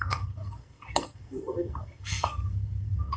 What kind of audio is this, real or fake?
fake